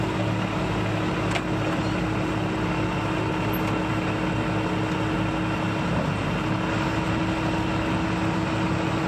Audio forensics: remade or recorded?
recorded